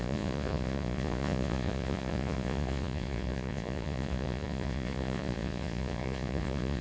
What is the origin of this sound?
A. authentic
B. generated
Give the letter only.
B